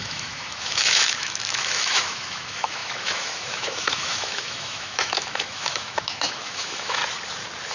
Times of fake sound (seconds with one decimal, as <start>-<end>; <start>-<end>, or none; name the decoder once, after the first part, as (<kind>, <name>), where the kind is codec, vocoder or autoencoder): 0.0-7.0 (autoencoder, DAC-VAE)